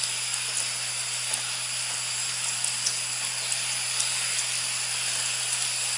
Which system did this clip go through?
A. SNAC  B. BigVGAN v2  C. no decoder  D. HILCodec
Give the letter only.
C